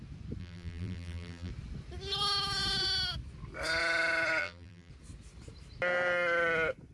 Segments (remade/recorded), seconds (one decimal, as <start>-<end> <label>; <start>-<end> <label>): 0.0-0.4 recorded; 0.4-1.5 remade; 1.5-4.4 recorded; 4.4-4.9 remade; 4.9-6.9 recorded